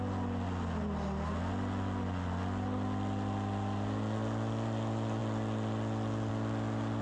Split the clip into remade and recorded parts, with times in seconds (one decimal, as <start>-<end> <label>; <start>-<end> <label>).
0.0-7.0 recorded